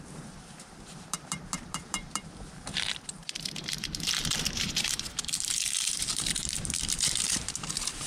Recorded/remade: remade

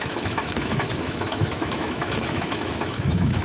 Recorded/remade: remade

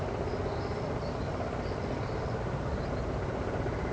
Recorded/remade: recorded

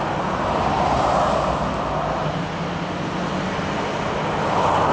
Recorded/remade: recorded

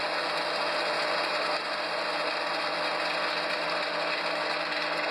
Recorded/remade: recorded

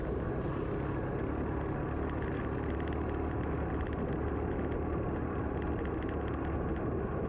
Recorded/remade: recorded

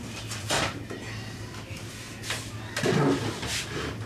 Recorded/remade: recorded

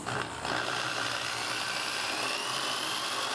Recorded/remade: remade